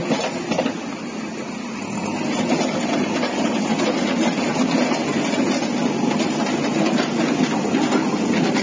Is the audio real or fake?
real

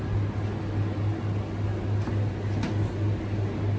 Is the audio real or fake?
real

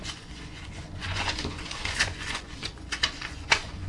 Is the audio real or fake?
fake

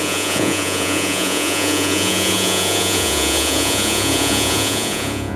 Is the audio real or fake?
fake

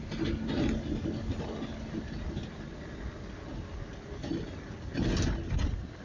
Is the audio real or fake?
real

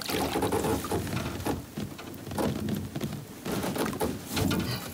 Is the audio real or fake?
real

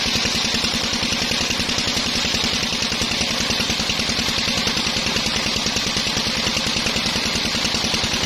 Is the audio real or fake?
real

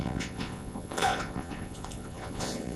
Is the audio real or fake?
fake